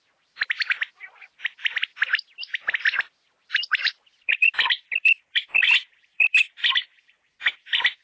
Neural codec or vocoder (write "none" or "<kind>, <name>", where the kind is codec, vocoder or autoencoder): none